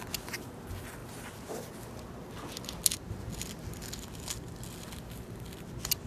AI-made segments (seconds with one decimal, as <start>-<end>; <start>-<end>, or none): none